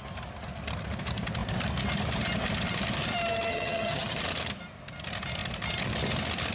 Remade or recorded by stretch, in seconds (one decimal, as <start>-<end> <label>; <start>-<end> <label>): 0.0-3.5 recorded; 3.5-4.2 remade; 4.2-6.5 recorded